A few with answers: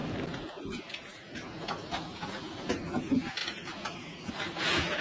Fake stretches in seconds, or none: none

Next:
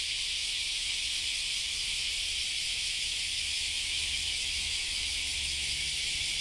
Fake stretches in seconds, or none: 0.4-2.1 (autoencoder, DAC-VAE); 2.7-5.9

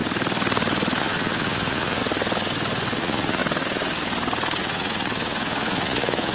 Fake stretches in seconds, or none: 1.0-2.0 (vocoder, Vocos); 3.0-3.4; 4.6-6.3

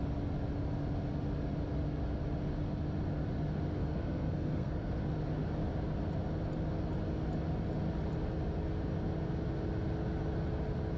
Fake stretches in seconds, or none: 3.8-4.9 (codec, SNAC)